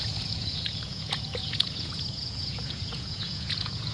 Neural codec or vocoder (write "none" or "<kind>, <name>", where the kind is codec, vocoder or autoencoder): vocoder, Vocos